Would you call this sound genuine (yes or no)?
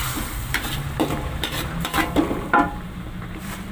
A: no